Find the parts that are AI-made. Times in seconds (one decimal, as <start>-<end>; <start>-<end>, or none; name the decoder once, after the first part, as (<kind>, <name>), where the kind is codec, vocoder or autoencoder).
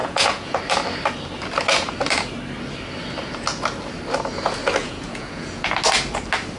0.0-0.6 (vocoder, Vocos); 4.8-5.7